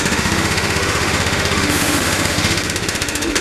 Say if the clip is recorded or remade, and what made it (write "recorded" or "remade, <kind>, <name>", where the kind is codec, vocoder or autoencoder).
remade, autoencoder, DAC-VAE